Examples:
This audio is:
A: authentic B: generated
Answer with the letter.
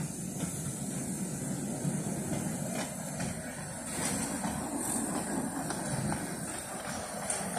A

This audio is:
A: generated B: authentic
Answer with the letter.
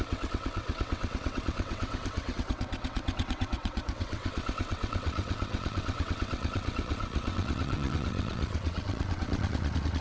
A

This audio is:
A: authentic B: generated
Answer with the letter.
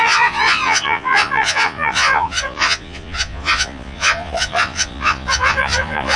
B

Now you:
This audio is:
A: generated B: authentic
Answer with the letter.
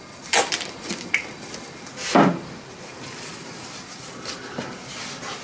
B